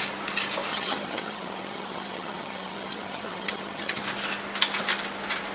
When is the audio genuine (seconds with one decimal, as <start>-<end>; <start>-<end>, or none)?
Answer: 0.0-0.7; 4.0-5.5